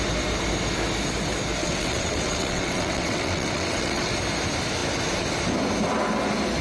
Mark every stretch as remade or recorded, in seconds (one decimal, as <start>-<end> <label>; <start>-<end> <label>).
0.0-1.6 recorded; 1.6-4.1 remade; 4.1-6.6 recorded